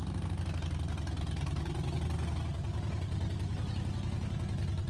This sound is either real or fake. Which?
real